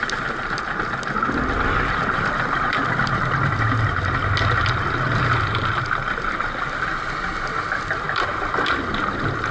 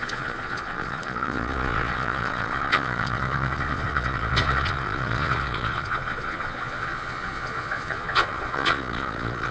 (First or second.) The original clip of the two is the first